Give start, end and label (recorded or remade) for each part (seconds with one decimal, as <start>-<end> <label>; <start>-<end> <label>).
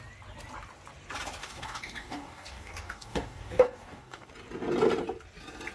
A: 0.0-1.4 recorded; 1.4-4.3 remade; 4.3-5.7 recorded